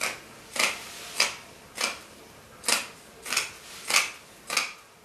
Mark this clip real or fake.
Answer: real